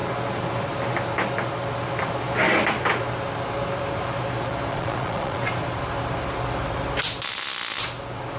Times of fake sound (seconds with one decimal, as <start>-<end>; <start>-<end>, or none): 4.7-5.4